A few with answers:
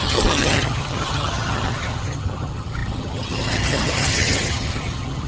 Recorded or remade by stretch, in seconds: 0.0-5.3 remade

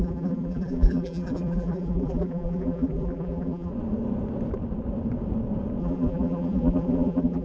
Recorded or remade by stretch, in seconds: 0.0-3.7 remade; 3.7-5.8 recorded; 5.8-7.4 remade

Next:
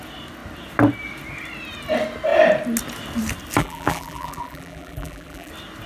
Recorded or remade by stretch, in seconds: 0.0-3.6 recorded; 3.6-5.5 remade; 5.5-5.9 recorded

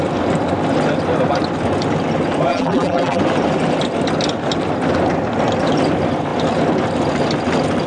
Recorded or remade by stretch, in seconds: 0.0-2.5 recorded; 2.5-3.2 remade; 3.2-7.9 recorded